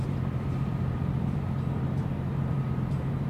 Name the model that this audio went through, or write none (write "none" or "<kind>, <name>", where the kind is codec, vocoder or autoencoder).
vocoder, BigVGAN v2